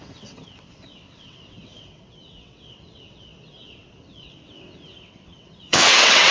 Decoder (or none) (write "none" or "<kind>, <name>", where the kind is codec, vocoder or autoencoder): vocoder, WaveNeXt